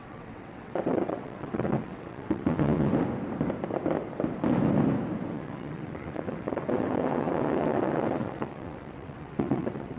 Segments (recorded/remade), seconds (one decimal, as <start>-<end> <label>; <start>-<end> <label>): 0.0-2.9 remade; 2.9-5.3 recorded; 5.3-10.0 remade

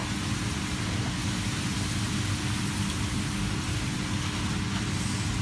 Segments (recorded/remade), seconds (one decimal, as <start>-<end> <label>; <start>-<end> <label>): 0.0-5.4 recorded